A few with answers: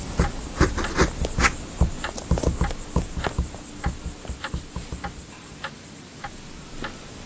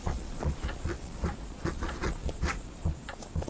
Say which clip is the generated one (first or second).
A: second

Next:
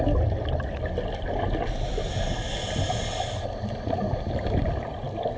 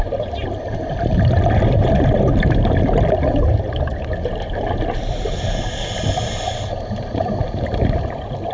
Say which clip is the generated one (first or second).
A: second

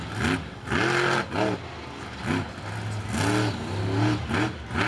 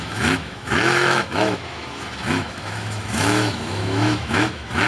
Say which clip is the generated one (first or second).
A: second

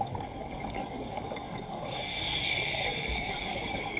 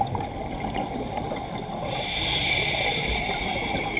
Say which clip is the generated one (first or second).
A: first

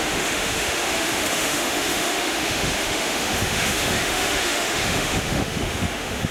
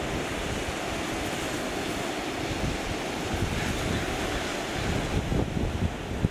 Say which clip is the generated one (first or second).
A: first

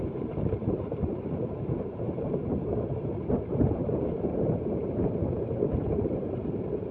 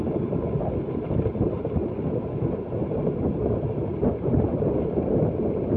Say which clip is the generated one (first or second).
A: first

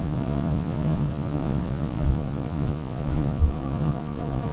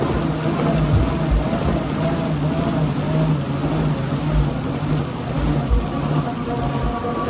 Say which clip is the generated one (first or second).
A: first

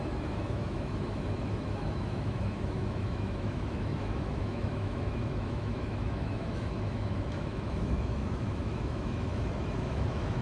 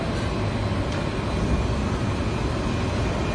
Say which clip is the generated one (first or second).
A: first